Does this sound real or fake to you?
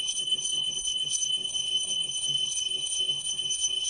fake